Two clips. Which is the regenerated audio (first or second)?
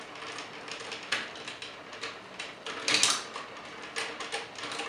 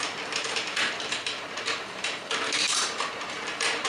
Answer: second